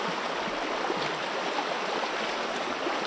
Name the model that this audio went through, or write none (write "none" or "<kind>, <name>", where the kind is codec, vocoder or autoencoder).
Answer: none